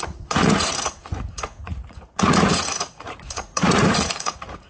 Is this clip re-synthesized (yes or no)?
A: yes